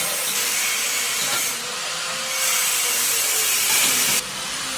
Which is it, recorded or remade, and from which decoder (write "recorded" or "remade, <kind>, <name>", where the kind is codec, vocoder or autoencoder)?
recorded